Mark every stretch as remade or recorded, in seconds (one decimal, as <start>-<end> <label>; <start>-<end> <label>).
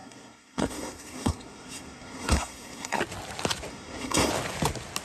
0.0-3.0 remade; 3.0-3.7 recorded; 3.7-4.3 remade; 4.3-5.0 recorded